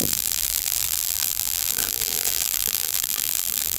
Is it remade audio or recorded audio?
remade